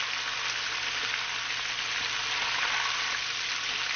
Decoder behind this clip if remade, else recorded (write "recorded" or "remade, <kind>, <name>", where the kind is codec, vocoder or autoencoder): recorded